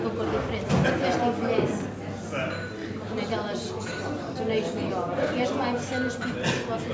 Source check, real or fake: real